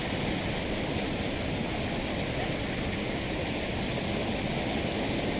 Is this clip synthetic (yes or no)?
no